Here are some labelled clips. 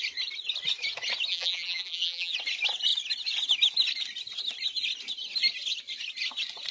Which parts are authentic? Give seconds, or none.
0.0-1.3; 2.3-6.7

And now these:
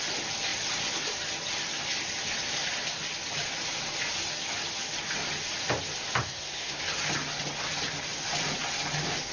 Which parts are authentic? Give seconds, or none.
0.0-6.2; 6.8-9.3

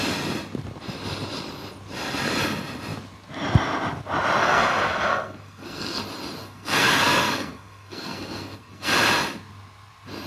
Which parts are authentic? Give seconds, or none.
0.0-4.4; 6.0-6.4; 8.9-10.3

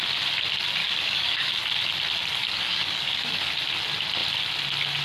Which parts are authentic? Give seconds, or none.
0.0-0.8; 1.5-2.4; 3.5-5.0

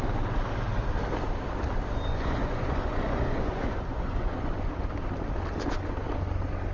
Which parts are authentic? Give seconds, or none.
0.0-2.1; 4.7-6.7